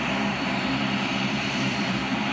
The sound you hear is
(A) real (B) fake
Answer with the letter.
B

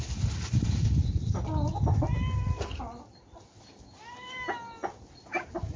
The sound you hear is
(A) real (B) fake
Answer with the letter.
A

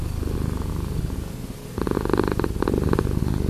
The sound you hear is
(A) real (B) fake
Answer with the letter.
A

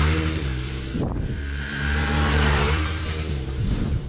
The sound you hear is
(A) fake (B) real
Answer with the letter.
A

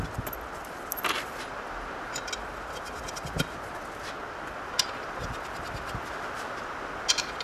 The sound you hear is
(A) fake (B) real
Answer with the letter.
B